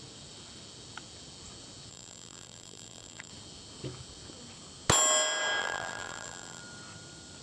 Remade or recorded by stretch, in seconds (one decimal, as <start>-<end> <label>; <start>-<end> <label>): 0.0-1.9 recorded; 1.9-3.3 remade; 3.3-5.6 recorded; 5.6-6.6 remade; 6.6-7.4 recorded